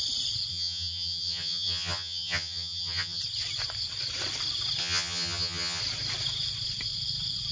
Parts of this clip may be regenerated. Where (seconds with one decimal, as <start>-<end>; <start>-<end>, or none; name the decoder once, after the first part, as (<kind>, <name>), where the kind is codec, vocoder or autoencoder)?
0.5-3.2 (vocoder, HiFi-GAN); 4.8-5.8

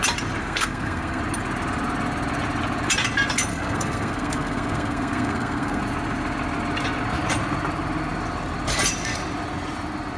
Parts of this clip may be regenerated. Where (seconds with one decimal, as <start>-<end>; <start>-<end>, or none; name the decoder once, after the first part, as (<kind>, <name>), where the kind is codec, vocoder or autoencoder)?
0.4-1.2 (codec, SNAC); 3.5-5.8